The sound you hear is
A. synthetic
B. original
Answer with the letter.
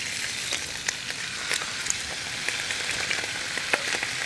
B